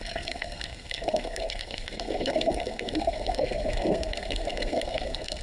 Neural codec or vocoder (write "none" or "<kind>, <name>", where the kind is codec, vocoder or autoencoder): codec, SNAC